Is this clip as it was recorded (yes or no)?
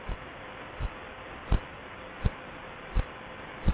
yes